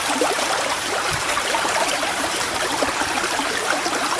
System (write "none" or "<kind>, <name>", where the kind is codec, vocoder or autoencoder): vocoder, BigVGAN v2